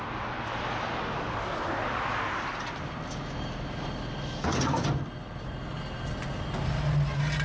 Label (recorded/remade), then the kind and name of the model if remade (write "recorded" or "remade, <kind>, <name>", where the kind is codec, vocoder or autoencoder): recorded